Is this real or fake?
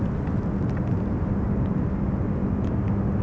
real